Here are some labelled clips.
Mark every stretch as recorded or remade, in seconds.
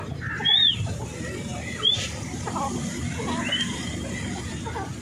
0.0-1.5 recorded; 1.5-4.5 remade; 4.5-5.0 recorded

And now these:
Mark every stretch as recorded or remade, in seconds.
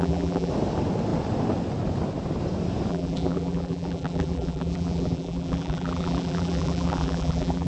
0.0-0.5 remade; 0.5-2.9 recorded; 2.9-7.7 remade